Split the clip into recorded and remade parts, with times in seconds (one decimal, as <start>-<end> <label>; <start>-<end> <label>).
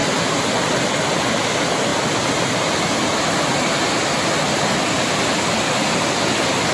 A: 0.0-6.7 recorded